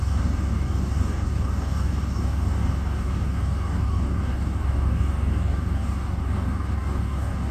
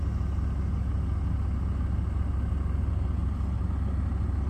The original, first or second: second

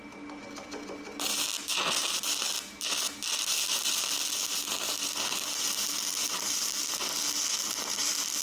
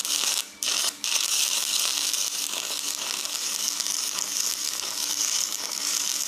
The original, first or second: first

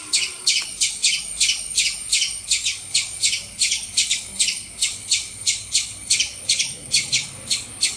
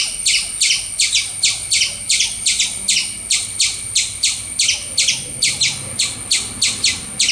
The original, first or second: second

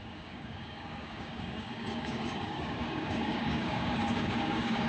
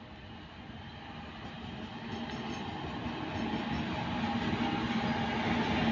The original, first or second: second